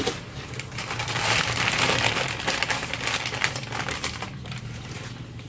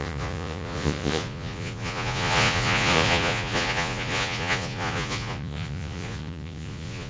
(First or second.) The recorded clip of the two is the first